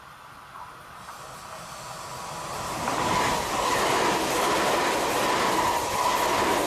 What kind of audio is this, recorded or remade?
recorded